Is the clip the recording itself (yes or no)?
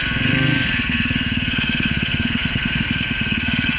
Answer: no